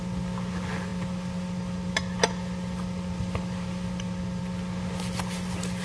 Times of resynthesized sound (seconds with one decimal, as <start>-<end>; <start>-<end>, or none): 0.9-4.4